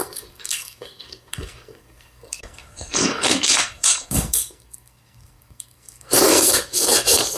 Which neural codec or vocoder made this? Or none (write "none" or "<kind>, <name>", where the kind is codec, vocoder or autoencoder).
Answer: codec, SNAC